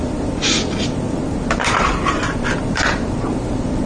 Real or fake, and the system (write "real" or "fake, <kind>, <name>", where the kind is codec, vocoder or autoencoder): fake, vocoder, BigVGAN v2